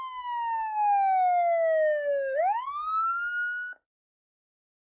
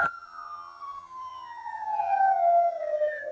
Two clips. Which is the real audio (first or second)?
first